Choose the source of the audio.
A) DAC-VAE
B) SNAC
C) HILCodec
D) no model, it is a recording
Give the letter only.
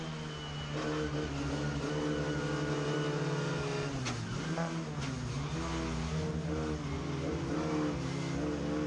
D